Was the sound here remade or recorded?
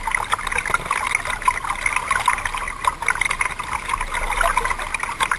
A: recorded